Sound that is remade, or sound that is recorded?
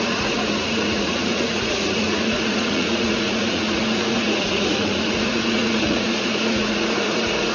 remade